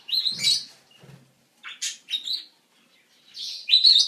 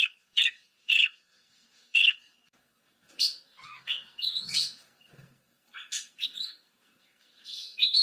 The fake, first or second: second